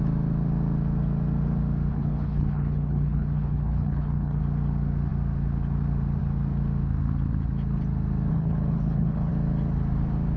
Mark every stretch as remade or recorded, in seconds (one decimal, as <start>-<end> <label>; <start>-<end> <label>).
0.0-1.9 recorded; 1.9-4.4 remade; 4.4-8.3 recorded; 8.3-9.3 remade; 9.3-10.4 recorded

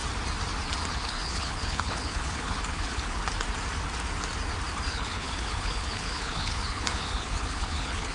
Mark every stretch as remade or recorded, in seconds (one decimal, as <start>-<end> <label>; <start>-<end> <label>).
0.0-0.9 recorded; 0.9-3.2 remade; 3.2-4.9 recorded; 4.9-8.1 remade

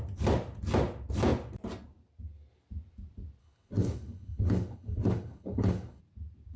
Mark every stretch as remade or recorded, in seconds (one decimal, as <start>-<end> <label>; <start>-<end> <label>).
0.0-3.4 recorded; 3.4-6.0 remade; 6.0-6.6 recorded

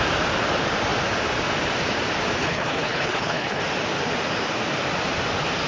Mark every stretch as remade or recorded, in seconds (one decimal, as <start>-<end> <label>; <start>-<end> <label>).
0.0-2.4 recorded; 2.4-3.6 remade; 3.6-5.7 recorded

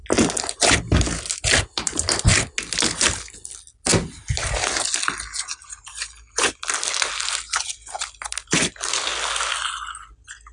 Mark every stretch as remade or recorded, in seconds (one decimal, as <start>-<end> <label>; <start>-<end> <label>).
0.0-10.5 recorded

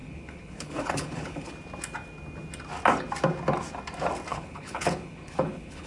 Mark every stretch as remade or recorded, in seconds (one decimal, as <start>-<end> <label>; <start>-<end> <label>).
0.0-1.5 remade; 1.5-4.3 recorded; 4.3-5.9 remade

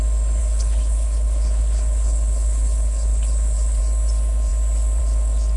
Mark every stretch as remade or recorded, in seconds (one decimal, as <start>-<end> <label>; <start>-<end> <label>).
0.0-0.4 recorded; 0.4-3.8 remade; 3.8-5.6 recorded